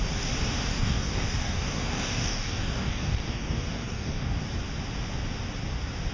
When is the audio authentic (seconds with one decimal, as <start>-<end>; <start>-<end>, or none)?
0.0-0.7; 4.4-6.1